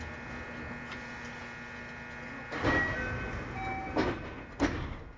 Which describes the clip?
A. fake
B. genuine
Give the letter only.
B